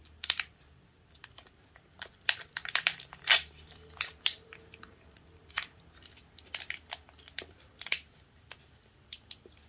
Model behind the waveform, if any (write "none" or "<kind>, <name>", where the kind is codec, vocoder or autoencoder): vocoder, BigVGAN v2